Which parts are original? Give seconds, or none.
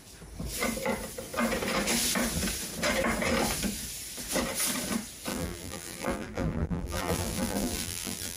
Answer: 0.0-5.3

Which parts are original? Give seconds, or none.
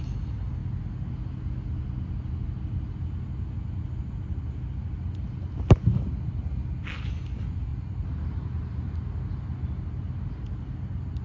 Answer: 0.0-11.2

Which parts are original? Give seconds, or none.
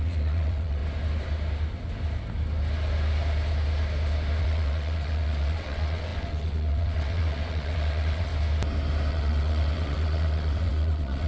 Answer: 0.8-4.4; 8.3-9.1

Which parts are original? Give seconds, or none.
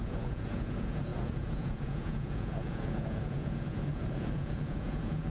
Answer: none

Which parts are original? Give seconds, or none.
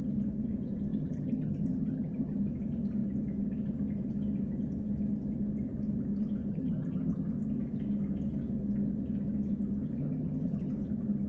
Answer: 0.0-0.9; 2.4-6.5; 7.3-10.0; 10.7-11.3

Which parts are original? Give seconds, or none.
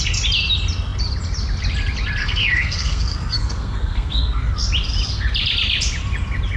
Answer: 0.0-2.2; 4.4-6.6